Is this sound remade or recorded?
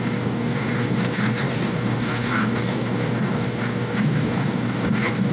remade